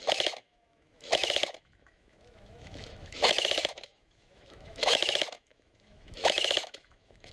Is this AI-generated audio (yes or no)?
yes